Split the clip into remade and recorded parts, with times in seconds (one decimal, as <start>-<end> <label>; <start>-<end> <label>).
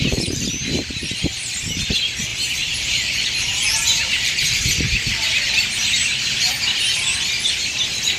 0.0-0.7 remade; 0.7-1.3 recorded; 1.3-1.8 remade; 1.8-2.3 recorded; 2.3-6.5 remade; 6.5-8.2 recorded